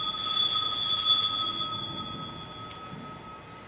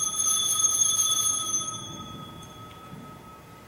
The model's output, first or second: second